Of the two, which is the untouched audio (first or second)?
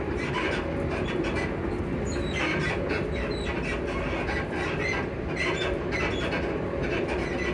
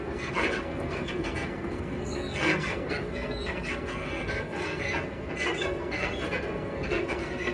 first